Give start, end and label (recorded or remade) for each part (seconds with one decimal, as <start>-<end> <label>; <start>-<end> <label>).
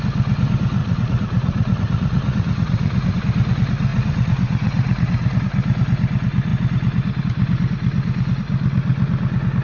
0.0-0.8 recorded; 0.8-3.2 remade; 3.2-3.9 recorded; 3.9-5.4 remade; 5.4-9.6 recorded